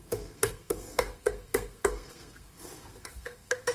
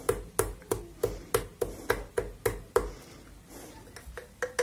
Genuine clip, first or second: second